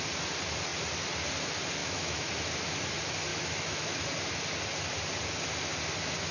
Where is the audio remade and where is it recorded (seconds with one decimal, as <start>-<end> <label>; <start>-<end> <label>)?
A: 0.0-1.8 recorded; 1.8-2.3 remade; 2.3-3.3 recorded; 3.3-4.0 remade; 4.0-6.3 recorded